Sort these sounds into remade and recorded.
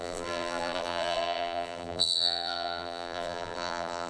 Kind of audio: remade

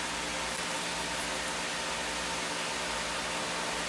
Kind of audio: recorded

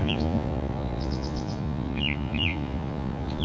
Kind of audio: remade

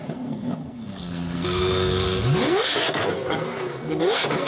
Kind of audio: remade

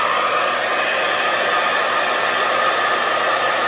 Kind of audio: recorded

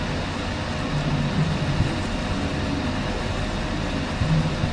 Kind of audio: recorded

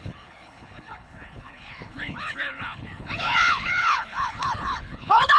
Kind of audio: remade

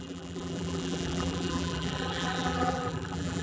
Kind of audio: remade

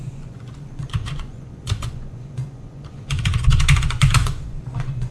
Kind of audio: remade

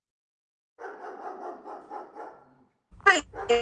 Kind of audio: recorded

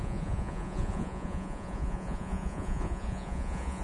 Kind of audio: remade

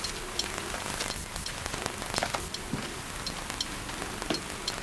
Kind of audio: recorded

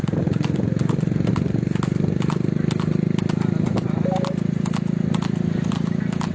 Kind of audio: recorded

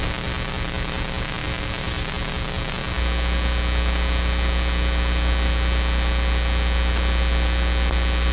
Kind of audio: recorded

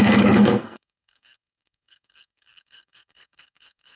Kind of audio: remade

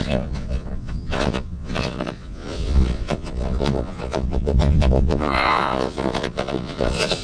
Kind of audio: remade